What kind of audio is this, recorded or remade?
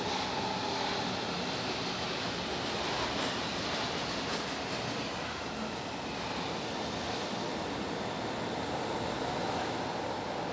recorded